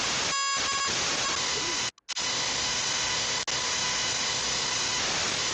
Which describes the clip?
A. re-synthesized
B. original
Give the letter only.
B